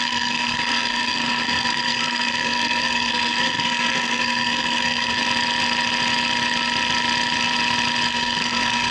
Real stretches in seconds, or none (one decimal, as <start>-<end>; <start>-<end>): 5.2-8.1